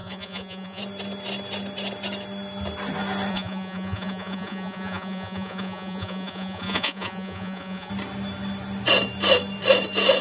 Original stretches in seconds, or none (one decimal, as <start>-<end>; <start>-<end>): 0.8-3.3; 7.9-10.2

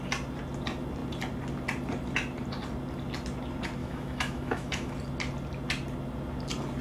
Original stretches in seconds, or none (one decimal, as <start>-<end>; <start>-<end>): 0.0-3.8; 4.9-6.8

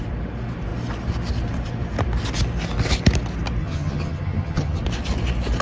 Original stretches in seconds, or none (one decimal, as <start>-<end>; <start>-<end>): 0.0-3.6; 4.8-5.6